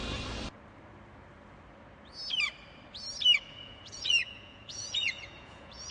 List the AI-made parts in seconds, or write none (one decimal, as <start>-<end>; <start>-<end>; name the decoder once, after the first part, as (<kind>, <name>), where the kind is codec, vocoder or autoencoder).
3.5-5.9 (vocoder, Vocos)